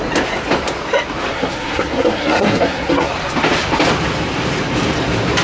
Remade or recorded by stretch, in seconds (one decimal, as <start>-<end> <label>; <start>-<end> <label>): 0.0-1.3 recorded; 1.3-3.1 remade; 3.1-5.4 recorded